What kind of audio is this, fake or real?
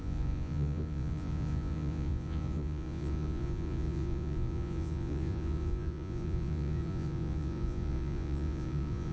fake